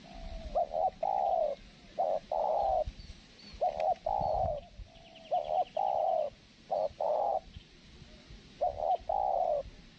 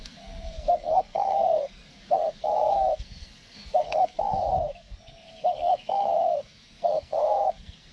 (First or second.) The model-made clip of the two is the second